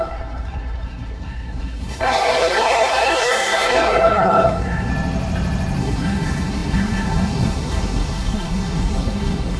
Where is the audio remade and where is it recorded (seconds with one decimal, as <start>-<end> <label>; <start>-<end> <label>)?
0.0-4.9 remade; 4.9-5.8 recorded; 5.8-9.6 remade